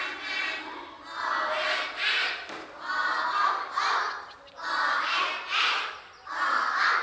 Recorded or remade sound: recorded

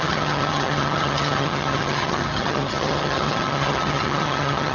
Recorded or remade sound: remade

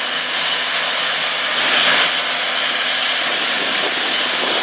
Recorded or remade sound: recorded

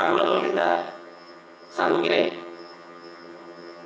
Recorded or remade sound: remade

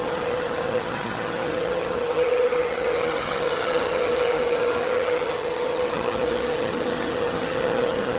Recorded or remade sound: remade